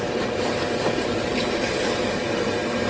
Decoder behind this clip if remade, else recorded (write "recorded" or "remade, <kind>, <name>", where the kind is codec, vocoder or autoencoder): remade, vocoder, BigVGAN v2